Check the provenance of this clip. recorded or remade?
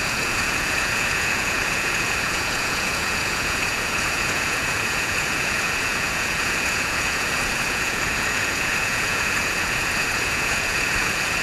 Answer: remade